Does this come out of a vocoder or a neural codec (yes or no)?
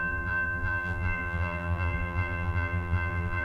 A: yes